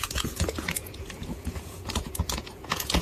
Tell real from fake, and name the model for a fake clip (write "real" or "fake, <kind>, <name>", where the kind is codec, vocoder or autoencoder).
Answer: fake, vocoder, Vocos